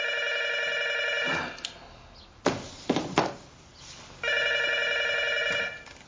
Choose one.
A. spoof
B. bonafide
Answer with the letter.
B